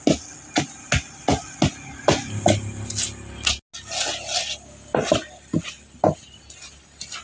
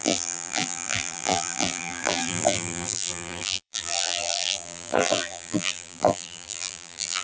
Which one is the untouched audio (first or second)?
first